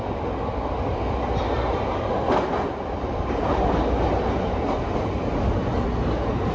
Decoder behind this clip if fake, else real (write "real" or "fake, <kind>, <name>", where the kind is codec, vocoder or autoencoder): real